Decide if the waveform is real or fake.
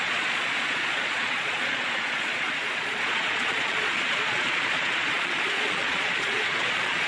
fake